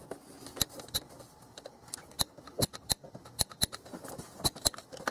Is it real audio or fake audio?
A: real